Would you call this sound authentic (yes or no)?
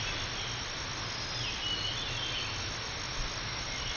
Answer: yes